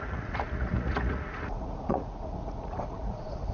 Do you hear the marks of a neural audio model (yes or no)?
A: yes